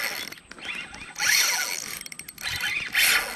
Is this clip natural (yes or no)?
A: yes